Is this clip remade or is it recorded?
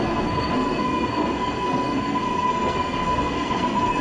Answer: remade